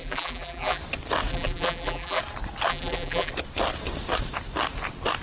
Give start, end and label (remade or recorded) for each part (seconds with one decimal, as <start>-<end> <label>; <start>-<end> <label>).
0.0-0.8 remade; 0.8-1.3 recorded; 1.3-2.2 remade; 2.2-2.7 recorded; 2.7-3.3 remade; 3.3-5.2 recorded

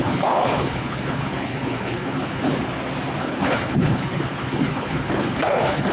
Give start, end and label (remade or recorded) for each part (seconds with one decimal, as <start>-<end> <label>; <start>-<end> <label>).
0.0-2.5 remade; 2.5-3.2 recorded; 3.2-5.9 remade